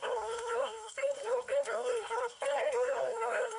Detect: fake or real fake